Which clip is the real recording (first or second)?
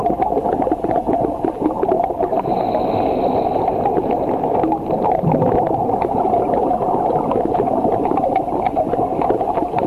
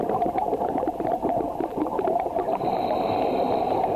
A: first